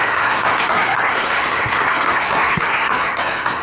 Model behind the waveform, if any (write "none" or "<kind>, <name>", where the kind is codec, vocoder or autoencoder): codec, SNAC